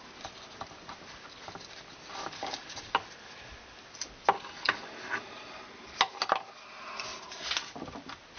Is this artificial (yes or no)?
no